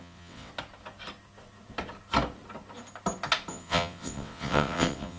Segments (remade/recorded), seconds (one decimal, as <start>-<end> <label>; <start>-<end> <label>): 0.0-0.5 remade; 0.5-3.5 recorded; 3.5-5.2 remade